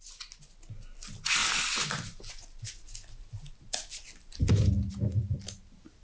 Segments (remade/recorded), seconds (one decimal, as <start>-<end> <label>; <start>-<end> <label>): 0.0-6.0 recorded